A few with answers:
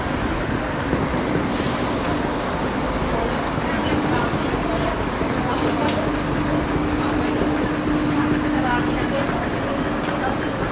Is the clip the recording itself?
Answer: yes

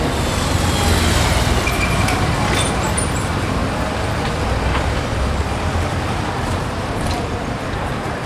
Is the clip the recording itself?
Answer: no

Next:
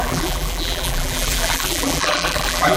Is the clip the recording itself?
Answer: no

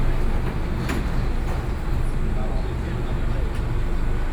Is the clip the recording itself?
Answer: yes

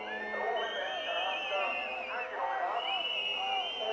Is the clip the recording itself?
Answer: yes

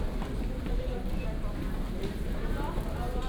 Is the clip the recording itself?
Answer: yes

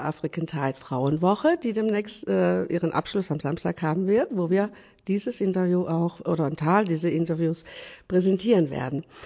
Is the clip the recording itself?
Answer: yes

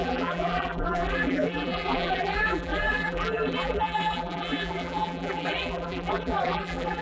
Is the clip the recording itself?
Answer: no